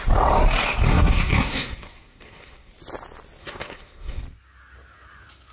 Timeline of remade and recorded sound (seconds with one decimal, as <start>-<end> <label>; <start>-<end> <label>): 0.0-0.9 recorded; 0.9-2.7 remade; 2.7-3.4 recorded; 3.4-4.2 remade; 4.2-5.5 recorded